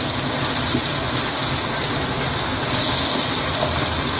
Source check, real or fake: real